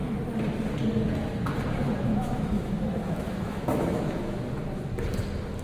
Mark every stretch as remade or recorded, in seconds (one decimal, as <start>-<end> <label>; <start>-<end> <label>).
0.0-2.1 recorded; 2.1-4.5 remade; 4.5-5.6 recorded